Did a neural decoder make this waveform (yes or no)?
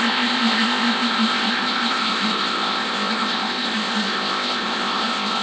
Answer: yes